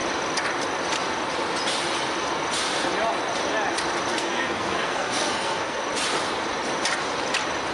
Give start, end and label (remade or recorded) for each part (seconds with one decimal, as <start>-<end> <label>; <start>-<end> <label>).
0.0-4.1 recorded; 4.1-5.8 remade; 5.8-7.7 recorded

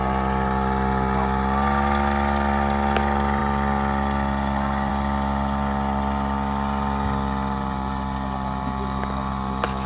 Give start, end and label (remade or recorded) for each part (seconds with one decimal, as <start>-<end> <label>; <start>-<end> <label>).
0.0-9.9 recorded